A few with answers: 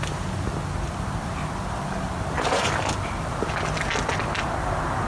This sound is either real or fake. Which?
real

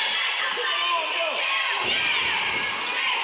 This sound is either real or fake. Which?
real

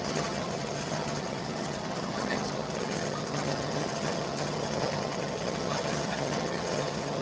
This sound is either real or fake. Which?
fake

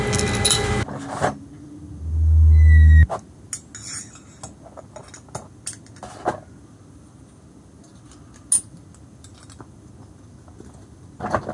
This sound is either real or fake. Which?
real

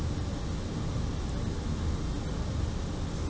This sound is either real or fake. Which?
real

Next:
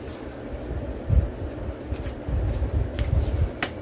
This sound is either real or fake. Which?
real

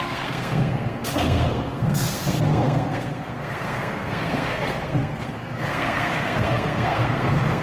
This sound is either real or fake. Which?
fake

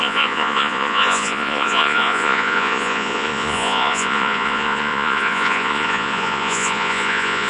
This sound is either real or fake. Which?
fake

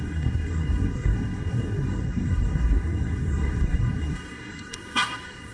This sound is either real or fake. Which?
fake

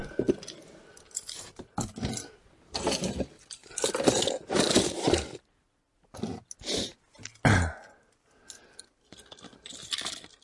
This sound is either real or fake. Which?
real